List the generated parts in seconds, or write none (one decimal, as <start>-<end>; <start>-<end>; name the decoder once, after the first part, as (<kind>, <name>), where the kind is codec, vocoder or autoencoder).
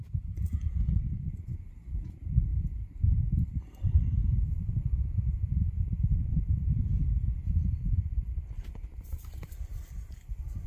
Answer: 0.0-2.5 (vocoder, BigVGAN v2); 3.9-10.7